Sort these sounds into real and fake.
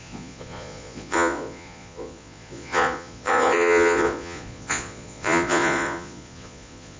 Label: fake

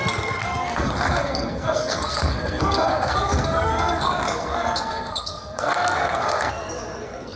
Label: fake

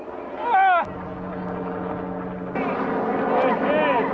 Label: real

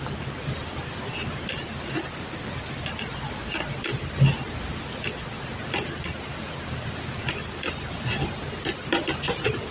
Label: real